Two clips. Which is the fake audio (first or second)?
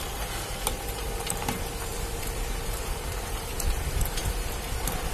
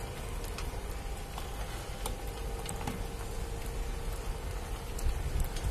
first